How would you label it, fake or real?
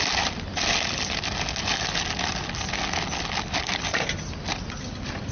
real